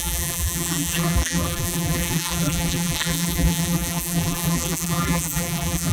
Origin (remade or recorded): remade